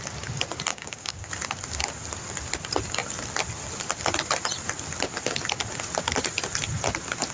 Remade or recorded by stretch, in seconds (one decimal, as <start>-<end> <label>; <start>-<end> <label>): 0.0-0.7 recorded; 0.7-1.3 remade; 1.3-7.3 recorded